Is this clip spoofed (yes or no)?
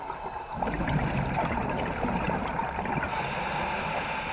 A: no